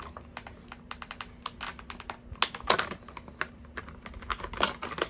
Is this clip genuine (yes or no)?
yes